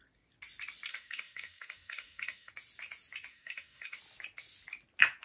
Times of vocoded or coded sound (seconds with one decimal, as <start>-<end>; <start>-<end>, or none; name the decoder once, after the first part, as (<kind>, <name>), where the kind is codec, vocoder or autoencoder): 0.9-2.5 (codec, DAC); 3.3-4.0